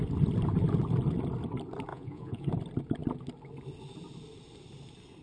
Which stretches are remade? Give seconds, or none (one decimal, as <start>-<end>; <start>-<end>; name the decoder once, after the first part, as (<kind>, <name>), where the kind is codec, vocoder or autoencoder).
1.9-2.5 (vocoder, Vocos)